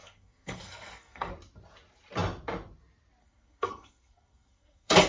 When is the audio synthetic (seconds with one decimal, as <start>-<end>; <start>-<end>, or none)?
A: 0.0-1.3; 3.2-5.1

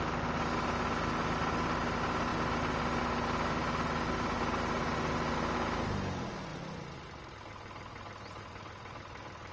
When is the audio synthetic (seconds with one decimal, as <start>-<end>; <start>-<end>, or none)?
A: none